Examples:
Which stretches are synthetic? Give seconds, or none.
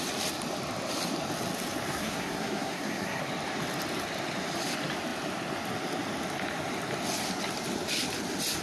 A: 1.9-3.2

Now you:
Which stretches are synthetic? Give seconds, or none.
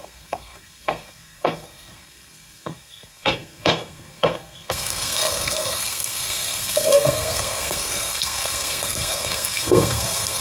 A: 0.0-10.4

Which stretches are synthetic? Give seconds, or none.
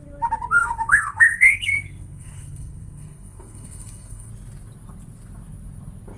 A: 0.6-4.3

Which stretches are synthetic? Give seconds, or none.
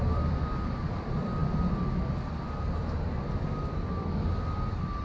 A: none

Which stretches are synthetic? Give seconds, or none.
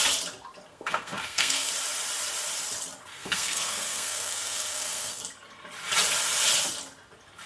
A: 0.7-1.7; 3.1-5.2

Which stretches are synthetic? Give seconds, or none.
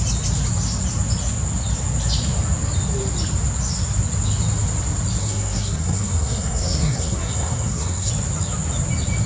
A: 5.2-8.1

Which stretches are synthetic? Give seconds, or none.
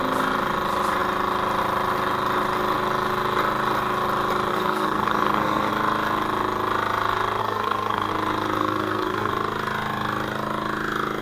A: 4.5-5.7; 7.4-8.1; 8.6-9.3